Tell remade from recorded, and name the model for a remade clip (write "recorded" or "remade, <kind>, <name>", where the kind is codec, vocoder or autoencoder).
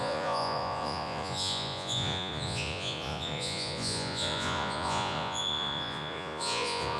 remade, vocoder, Vocos